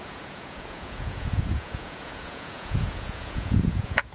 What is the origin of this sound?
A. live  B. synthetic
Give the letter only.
B